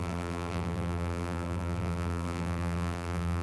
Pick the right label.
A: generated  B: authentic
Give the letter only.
A